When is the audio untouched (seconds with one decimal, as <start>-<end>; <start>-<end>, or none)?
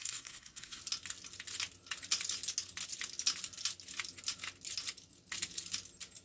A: 0.8-6.2